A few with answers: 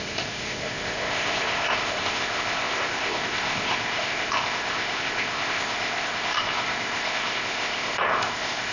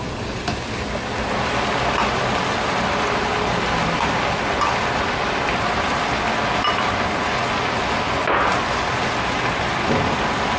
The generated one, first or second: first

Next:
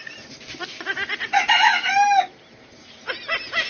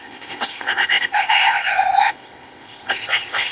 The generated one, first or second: second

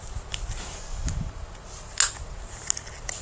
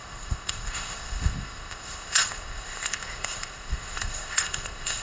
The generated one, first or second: second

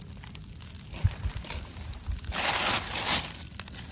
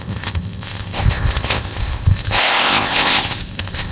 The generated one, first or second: second